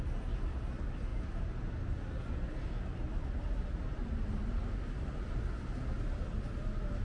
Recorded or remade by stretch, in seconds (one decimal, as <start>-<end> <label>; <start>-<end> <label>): 0.0-7.0 recorded